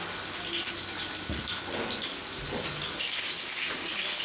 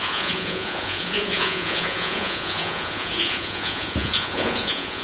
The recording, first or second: first